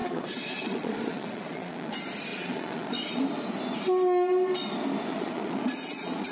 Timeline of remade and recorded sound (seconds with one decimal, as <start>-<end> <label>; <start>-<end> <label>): 0.0-1.9 remade; 1.9-2.3 recorded; 2.3-3.2 remade; 3.2-5.1 recorded; 5.1-6.3 remade